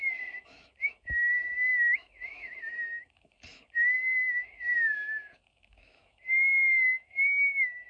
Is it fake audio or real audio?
fake